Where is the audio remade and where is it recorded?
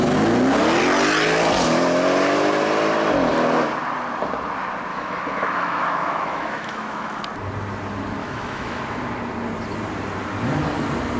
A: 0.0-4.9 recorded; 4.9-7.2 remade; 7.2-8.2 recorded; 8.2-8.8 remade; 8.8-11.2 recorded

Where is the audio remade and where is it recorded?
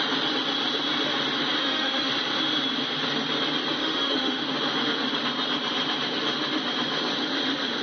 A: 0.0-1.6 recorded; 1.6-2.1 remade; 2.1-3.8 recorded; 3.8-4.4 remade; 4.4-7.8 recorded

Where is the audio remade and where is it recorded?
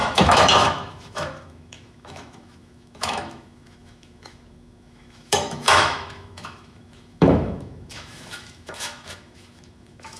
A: 0.0-10.2 remade